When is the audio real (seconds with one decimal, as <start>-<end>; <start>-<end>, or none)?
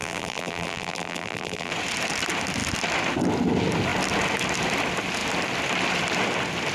1.7-6.7